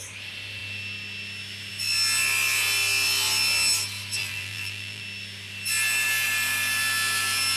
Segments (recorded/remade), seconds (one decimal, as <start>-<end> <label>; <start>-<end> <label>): 0.0-4.2 recorded; 4.2-5.0 remade; 5.0-7.6 recorded